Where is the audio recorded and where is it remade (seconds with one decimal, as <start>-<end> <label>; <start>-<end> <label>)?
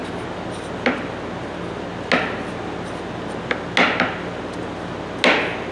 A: 0.0-5.7 recorded